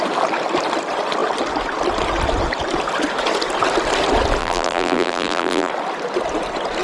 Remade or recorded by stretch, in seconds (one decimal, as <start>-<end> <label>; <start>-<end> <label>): 0.0-4.4 recorded; 4.4-5.7 remade; 5.7-6.8 recorded